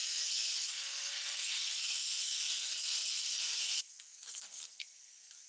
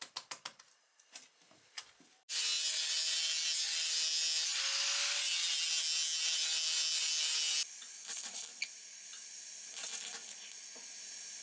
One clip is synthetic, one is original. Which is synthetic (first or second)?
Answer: first